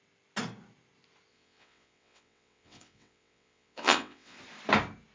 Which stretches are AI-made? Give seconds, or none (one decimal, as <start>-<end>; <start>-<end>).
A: 1.3-4.4